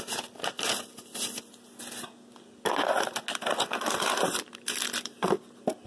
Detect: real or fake real